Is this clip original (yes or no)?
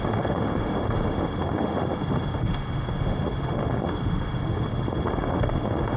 no